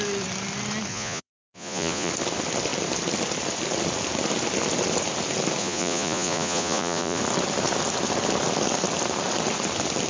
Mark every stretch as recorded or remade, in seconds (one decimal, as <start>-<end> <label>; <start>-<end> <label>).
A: 0.0-0.9 recorded; 0.9-2.1 remade; 2.1-5.6 recorded; 5.6-7.2 remade; 7.2-10.1 recorded